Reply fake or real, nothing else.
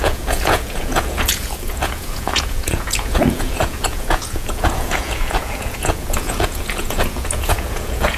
fake